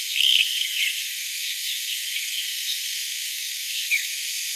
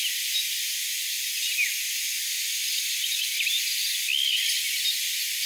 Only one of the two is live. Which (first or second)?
second